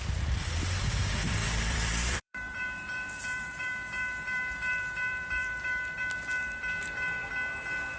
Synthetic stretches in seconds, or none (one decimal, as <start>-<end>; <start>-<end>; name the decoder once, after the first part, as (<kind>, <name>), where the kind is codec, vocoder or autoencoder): 1.4-6.0 (vocoder, BigVGAN v2); 6.4-7.3